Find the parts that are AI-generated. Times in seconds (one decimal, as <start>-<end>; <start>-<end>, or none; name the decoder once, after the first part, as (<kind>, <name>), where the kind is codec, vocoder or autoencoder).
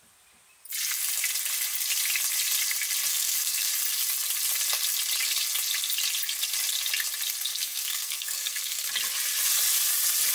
3.1-3.7 (codec, SNAC); 7.5-8.9